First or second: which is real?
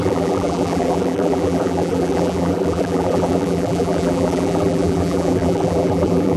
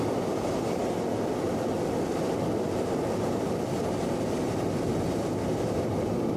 second